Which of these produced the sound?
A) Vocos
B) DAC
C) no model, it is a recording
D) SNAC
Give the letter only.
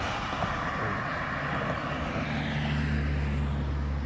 C